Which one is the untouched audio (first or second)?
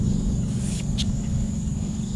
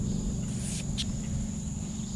second